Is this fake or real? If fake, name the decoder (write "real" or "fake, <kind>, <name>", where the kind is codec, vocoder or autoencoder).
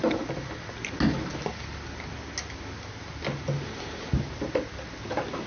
real